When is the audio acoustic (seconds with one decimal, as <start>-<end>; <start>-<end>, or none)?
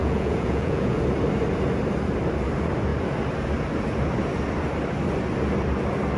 1.0-6.2